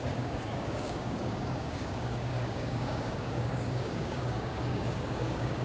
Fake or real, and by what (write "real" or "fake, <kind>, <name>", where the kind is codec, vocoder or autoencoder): fake, codec, DAC